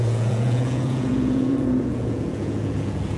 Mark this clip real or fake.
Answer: fake